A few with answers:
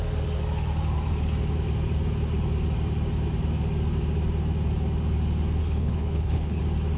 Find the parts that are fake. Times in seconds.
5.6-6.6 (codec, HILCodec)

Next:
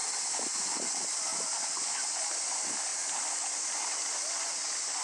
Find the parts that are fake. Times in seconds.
none

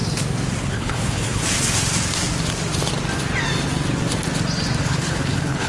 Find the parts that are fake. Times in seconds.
0.6-1.4 (codec, HILCodec); 4.8-5.7

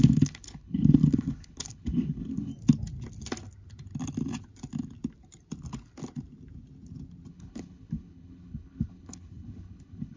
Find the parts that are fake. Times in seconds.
0.0-2.5 (codec, HILCodec); 7.3-10.2

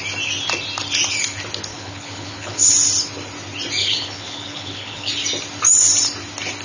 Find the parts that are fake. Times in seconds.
1.7-2.7 (codec, HILCodec); 3.8-5.1

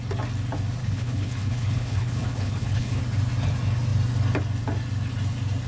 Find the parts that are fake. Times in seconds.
0.8-3.0 (codec, HILCodec)

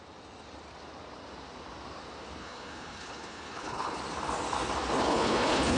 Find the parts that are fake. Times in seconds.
2.4-4.0 (codec, HILCodec); 5.1-5.8